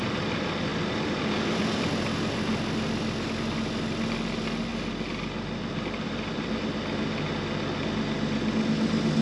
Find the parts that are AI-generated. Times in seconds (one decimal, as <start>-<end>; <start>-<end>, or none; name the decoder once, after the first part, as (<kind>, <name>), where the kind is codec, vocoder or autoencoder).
none